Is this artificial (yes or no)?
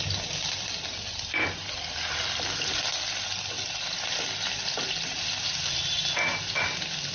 no